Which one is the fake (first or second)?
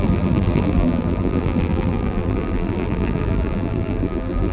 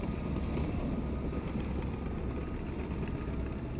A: first